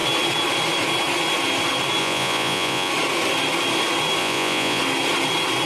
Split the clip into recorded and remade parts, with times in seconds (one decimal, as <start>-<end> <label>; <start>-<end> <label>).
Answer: 0.0-2.0 recorded; 2.0-2.9 remade; 2.9-4.2 recorded; 4.2-4.8 remade; 4.8-5.7 recorded